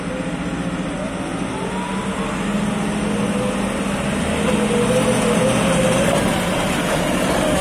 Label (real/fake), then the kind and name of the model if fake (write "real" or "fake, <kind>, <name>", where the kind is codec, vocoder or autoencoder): real